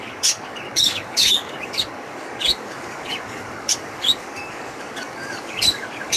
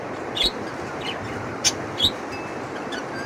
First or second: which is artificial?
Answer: first